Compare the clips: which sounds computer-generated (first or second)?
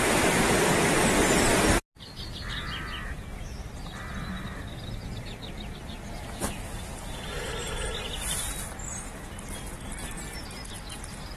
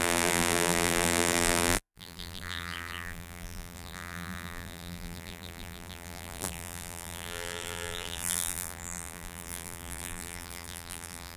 second